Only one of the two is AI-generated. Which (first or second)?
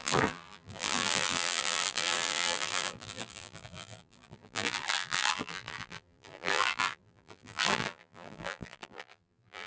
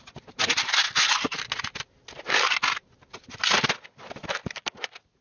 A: first